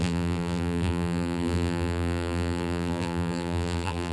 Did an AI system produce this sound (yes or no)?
yes